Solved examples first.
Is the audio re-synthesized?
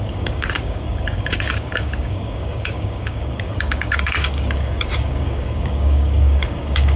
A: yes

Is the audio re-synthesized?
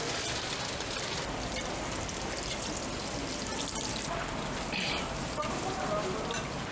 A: yes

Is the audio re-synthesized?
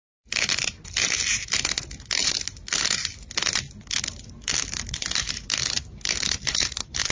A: no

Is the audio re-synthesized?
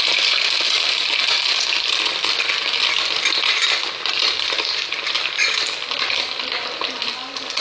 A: no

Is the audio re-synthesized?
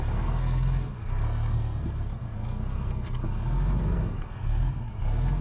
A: yes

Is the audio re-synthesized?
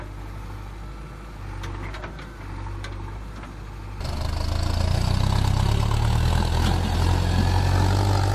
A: no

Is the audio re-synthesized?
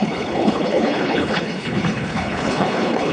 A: yes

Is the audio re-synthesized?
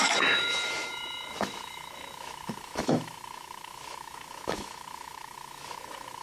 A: yes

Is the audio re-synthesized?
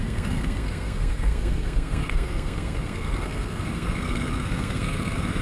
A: yes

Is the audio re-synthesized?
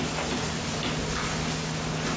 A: no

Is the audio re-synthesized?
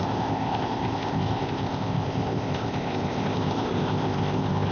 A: yes